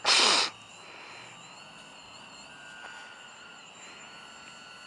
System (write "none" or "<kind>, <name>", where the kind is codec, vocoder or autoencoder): none